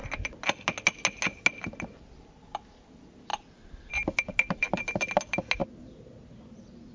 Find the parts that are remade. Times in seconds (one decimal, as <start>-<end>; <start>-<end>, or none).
none